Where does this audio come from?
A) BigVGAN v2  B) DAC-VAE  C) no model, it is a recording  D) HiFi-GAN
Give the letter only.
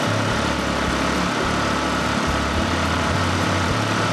A